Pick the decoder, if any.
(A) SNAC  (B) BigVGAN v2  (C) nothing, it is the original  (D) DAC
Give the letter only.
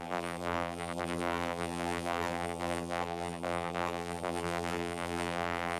B